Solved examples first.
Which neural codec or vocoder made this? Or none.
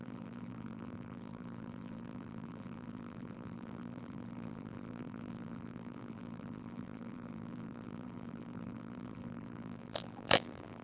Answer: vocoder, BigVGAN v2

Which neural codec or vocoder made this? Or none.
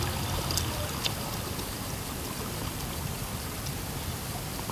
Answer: none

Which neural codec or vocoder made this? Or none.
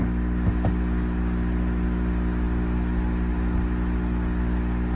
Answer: none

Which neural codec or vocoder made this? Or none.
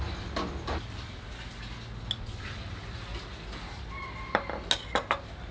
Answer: none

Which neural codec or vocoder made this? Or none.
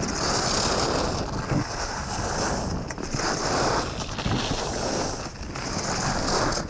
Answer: none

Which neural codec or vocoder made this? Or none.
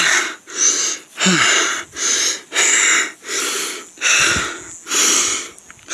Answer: none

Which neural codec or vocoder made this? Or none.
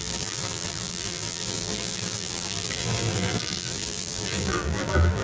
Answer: vocoder, BigVGAN v2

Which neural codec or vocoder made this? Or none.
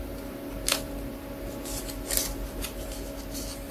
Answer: none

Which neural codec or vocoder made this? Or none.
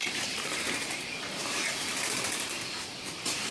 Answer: vocoder, BigVGAN v2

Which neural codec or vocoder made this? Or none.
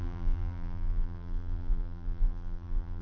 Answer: vocoder, BigVGAN v2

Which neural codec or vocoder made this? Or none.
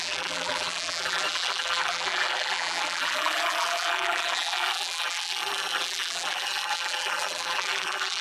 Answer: vocoder, BigVGAN v2